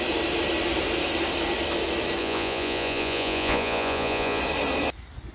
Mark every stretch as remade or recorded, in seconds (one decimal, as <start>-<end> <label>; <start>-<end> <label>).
0.0-2.2 recorded; 2.2-4.4 remade; 4.4-5.3 recorded